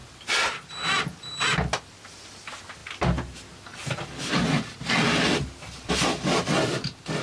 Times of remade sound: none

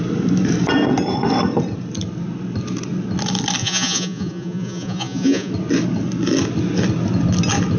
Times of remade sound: 3.6-5.5 (vocoder, Vocos)

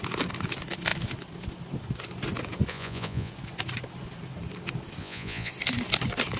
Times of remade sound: 2.7-3.3 (vocoder, Vocos); 5.0-5.5

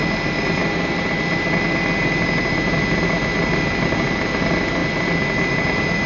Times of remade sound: none

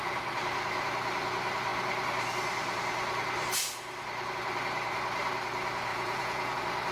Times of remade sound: 5.9-6.5 (vocoder, Vocos)

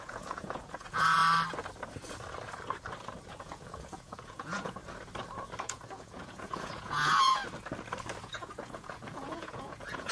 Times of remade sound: 0.0-1.2 (vocoder, Vocos); 3.4-4.8; 5.6-7.4; 8.2-10.1

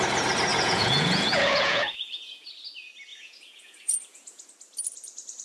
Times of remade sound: 0.5-2.5 (vocoder, Vocos); 3.1-4.5

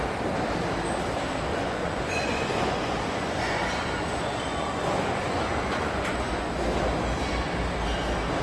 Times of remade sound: 1.5-6.5 (vocoder, Vocos)